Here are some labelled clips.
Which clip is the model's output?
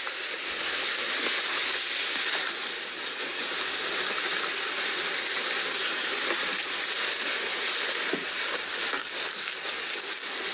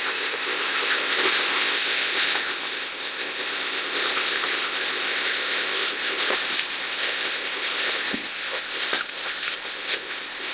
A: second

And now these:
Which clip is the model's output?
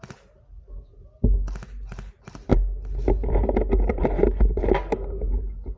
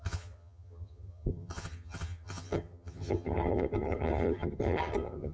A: second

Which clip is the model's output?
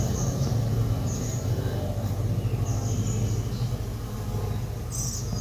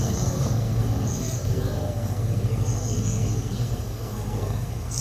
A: second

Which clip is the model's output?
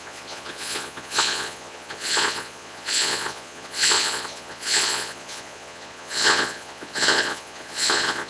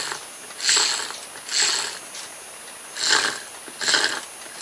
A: first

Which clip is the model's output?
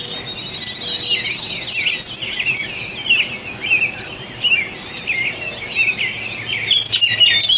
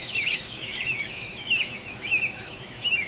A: second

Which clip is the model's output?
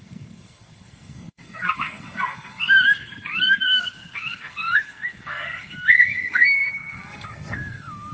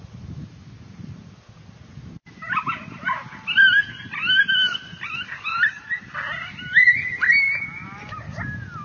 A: first